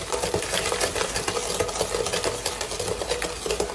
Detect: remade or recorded recorded